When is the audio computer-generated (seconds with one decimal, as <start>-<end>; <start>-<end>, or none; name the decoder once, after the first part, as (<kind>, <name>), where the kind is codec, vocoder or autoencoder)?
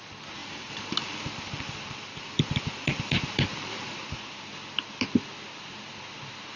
0.4-4.4 (vocoder, BigVGAN v2)